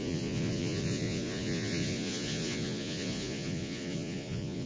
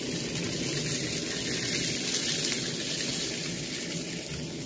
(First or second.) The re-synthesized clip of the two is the first